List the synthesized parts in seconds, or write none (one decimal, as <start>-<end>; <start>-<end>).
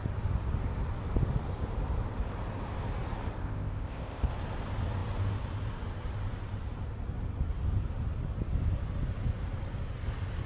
3.4-4.3